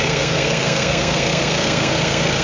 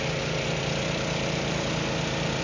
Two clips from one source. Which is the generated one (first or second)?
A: first